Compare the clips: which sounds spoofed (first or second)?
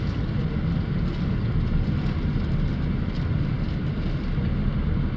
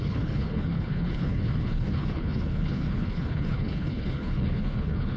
second